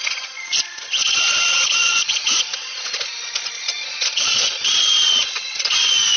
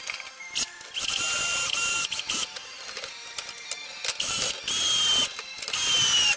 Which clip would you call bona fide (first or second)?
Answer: second